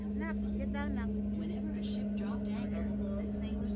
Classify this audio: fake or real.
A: real